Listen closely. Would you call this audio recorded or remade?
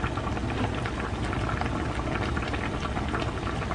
recorded